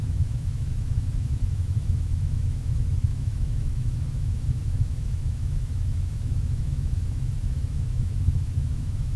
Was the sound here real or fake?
fake